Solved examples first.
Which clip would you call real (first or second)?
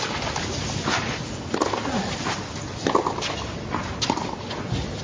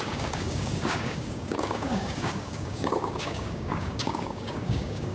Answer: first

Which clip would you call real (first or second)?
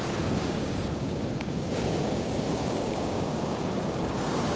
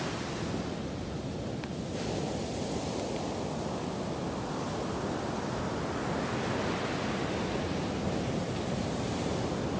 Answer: second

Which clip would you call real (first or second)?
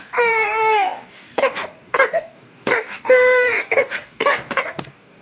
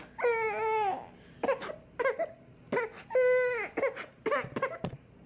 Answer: second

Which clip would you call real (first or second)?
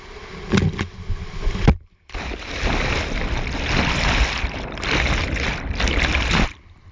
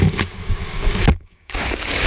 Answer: first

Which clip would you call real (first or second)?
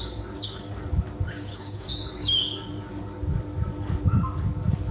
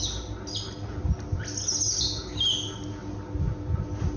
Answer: second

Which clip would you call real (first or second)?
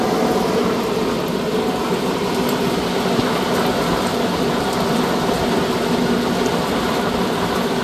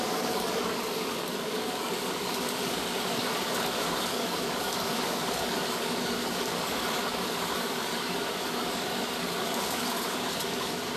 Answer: first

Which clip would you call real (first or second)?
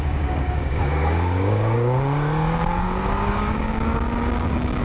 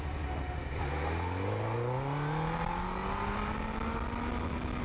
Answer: second